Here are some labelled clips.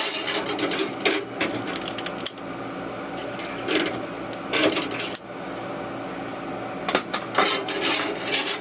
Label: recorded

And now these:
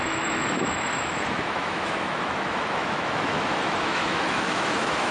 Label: remade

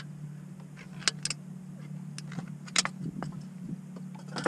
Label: recorded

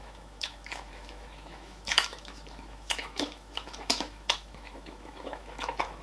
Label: remade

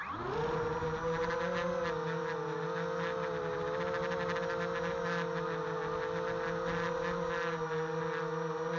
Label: recorded